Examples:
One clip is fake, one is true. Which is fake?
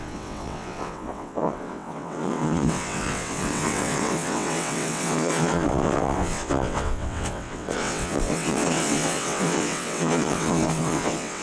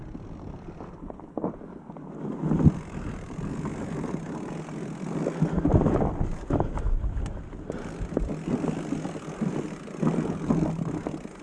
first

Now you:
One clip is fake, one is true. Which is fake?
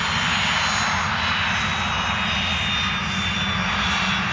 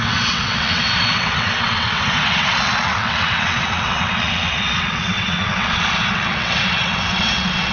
second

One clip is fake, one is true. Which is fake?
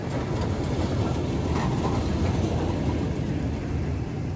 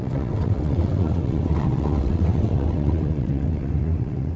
second